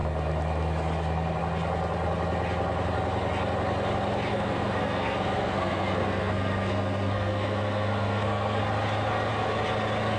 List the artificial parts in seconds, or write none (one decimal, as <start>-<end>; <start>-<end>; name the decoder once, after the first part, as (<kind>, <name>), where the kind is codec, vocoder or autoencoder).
4.3-8.6 (codec, SNAC)